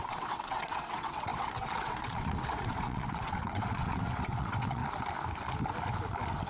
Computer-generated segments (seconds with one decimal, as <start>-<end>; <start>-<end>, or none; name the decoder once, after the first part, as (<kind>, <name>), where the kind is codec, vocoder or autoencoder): 0.0-4.8 (vocoder, WaveNeXt)